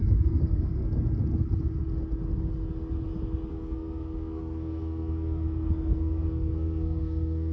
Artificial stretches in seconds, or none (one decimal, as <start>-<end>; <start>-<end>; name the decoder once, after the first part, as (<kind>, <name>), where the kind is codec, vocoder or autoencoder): 0.0-0.8 (codec, SNAC); 3.5-7.5